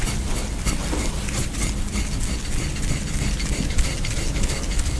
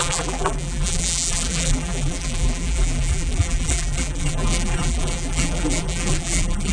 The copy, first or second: second